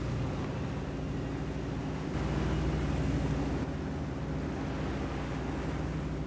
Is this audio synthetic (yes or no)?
no